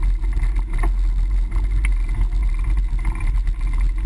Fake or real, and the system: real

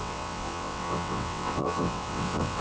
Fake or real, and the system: fake, vocoder, WaveNeXt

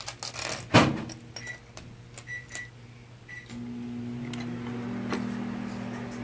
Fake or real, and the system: real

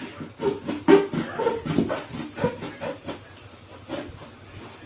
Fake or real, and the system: real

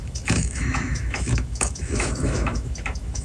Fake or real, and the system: fake, autoencoder, DAC-VAE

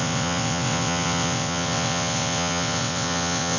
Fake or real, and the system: fake, vocoder, WaveNeXt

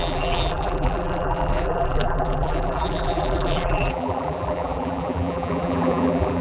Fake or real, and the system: fake, vocoder, BigVGAN v2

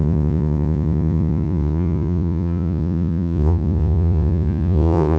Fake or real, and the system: fake, vocoder, Vocos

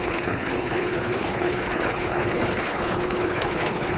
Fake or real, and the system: fake, codec, HILCodec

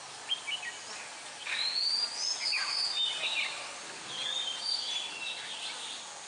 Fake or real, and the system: real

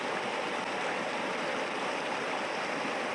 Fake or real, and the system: real